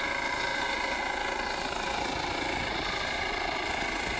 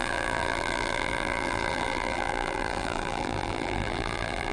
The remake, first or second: second